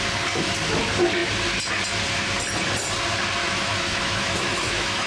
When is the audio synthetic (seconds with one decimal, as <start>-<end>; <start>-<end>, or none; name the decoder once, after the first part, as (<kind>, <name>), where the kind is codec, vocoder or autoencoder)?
3.4-5.1 (autoencoder, DAC-VAE)